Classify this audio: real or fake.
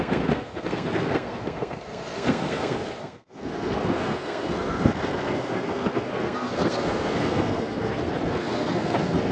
fake